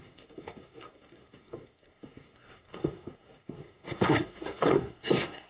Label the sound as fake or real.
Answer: fake